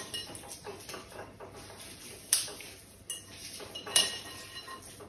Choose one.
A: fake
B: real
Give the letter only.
B